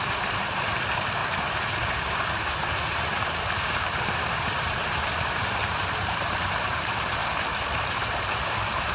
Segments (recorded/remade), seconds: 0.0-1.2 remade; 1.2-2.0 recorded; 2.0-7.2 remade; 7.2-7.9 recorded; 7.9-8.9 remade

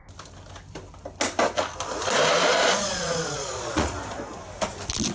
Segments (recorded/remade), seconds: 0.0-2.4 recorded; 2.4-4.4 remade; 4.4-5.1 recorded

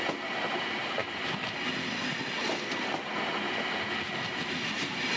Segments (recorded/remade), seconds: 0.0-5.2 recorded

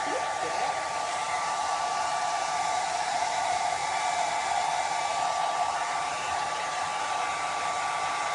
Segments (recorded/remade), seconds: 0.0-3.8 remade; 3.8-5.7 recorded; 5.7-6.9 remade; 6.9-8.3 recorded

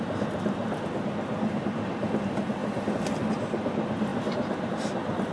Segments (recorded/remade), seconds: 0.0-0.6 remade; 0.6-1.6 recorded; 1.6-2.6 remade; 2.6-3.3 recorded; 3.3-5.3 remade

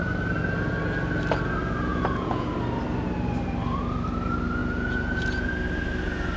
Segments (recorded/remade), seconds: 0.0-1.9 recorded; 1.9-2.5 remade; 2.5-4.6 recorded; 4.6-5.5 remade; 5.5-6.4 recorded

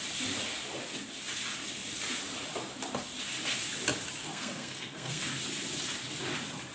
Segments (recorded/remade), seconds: 0.0-4.2 recorded; 4.2-5.3 remade; 5.3-6.7 recorded